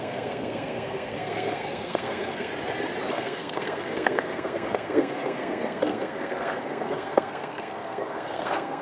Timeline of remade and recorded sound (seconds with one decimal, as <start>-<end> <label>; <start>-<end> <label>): 0.0-2.5 remade; 2.5-3.1 recorded; 3.1-8.8 remade